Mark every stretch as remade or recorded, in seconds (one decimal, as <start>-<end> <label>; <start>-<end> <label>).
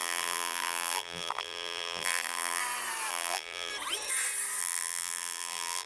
0.0-2.6 remade; 2.6-3.1 recorded; 3.1-3.7 remade; 3.7-4.6 recorded; 4.6-5.9 remade